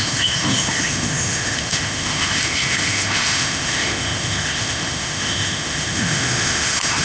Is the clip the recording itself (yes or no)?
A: no